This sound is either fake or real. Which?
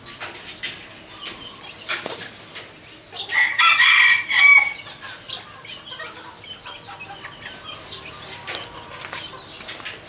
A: real